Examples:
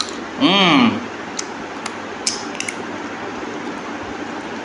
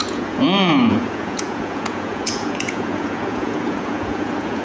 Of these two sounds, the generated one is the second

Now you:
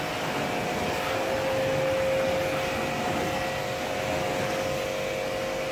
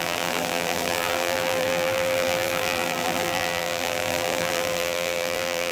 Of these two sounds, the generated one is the second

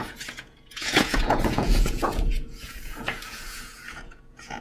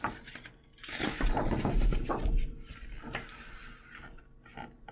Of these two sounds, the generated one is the first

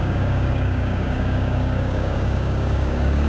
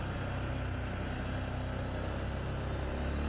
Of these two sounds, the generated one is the first